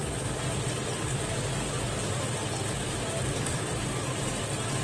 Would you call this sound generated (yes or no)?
no